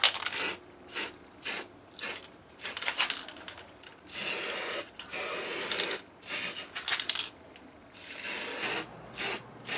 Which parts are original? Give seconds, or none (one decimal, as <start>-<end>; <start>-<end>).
0.0-9.8